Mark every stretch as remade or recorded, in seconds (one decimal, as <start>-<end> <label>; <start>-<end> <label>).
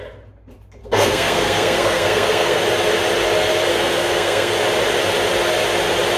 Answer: 0.0-0.8 recorded; 0.8-2.6 remade; 2.6-3.7 recorded; 3.7-4.5 remade; 4.5-6.2 recorded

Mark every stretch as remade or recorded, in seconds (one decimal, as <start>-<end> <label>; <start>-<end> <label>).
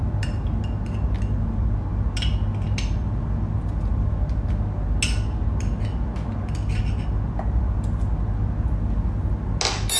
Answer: 0.0-10.0 recorded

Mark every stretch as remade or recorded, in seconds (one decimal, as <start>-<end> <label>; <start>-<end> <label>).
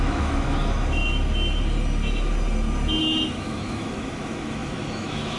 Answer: 0.0-1.0 remade; 1.0-3.0 recorded; 3.0-5.4 remade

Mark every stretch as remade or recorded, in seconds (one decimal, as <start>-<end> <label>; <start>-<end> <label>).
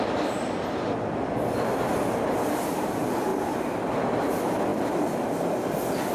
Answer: 0.0-3.3 recorded; 3.3-4.3 remade; 4.3-6.1 recorded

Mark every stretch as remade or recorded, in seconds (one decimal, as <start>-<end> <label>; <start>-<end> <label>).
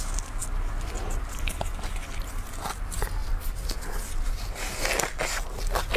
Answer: 0.0-3.2 recorded; 3.2-5.4 remade; 5.4-6.0 recorded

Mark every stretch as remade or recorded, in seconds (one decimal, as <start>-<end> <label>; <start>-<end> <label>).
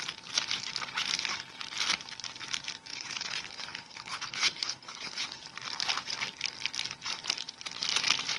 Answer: 0.0-2.9 recorded; 2.9-5.4 remade; 5.4-8.4 recorded